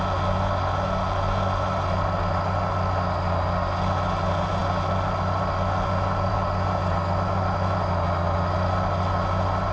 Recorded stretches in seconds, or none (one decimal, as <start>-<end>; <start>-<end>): 0.0-9.7